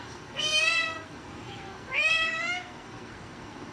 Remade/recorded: remade